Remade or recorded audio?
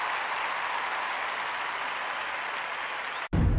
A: recorded